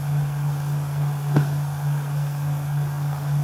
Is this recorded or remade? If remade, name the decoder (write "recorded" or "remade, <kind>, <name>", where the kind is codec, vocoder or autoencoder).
remade, codec, SNAC